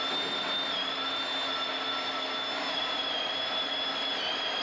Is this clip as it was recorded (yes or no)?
yes